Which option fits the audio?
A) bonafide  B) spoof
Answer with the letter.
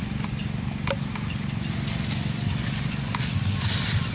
A